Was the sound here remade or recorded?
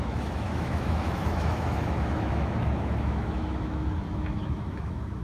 remade